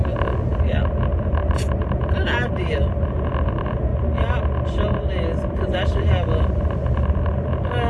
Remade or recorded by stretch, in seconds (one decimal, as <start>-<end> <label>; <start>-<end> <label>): 0.0-7.9 recorded